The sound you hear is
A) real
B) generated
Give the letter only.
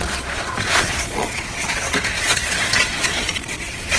B